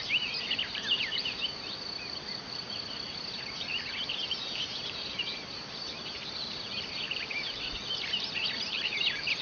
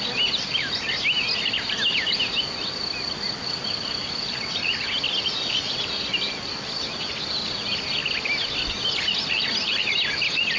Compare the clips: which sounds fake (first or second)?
first